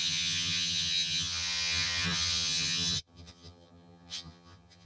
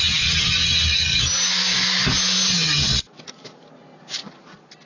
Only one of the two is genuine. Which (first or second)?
second